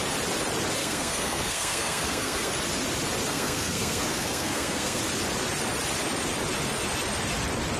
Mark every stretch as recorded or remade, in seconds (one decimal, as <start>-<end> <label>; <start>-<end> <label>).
0.0-0.8 recorded; 0.8-2.5 remade; 2.5-3.3 recorded; 3.3-5.0 remade; 5.0-7.8 recorded